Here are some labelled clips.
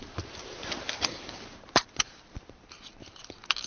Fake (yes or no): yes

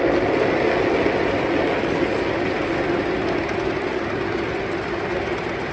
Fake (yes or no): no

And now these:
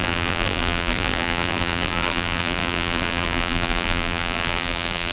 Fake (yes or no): yes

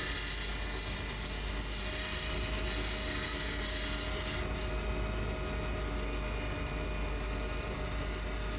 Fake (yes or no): no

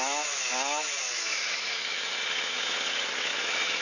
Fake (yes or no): yes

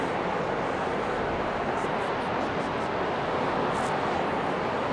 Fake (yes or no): no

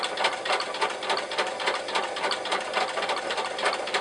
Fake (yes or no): no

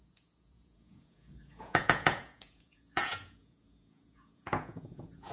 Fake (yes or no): yes